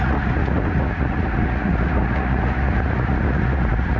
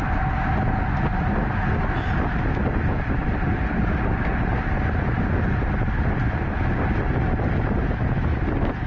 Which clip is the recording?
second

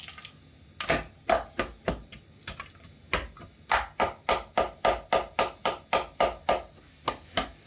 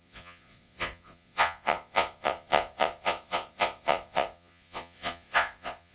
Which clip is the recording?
first